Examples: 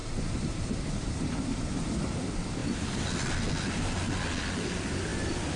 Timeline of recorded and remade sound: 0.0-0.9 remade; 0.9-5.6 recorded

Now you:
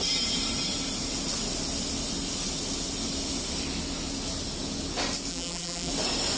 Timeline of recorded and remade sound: 0.0-5.3 recorded; 5.3-5.9 remade; 5.9-6.4 recorded